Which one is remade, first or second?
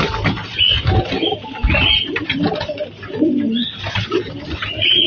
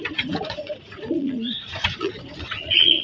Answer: second